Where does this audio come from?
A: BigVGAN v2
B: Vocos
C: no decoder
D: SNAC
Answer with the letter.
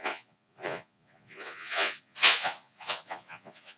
B